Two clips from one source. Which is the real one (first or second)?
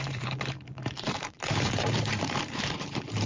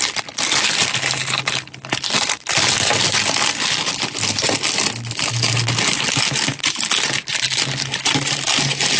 second